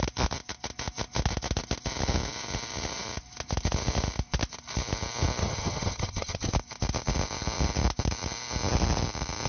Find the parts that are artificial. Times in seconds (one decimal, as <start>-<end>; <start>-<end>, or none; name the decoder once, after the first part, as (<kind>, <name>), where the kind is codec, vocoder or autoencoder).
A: 5.4-6.5 (vocoder, HiFi-GAN)